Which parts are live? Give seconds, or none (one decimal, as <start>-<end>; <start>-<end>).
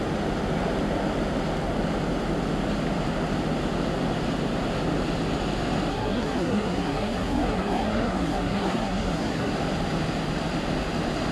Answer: 0.0-5.9; 9.5-11.3